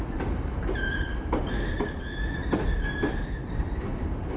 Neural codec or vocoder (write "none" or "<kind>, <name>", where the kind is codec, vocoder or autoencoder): none